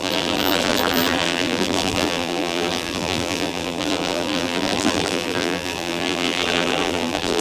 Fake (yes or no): yes